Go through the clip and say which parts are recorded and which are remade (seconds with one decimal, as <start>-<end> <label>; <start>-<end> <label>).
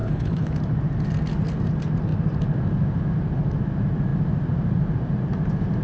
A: 0.0-0.5 remade; 0.5-5.8 recorded